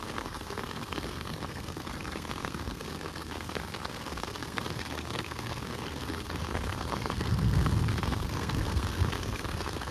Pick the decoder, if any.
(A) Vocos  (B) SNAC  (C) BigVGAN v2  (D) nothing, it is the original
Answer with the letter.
B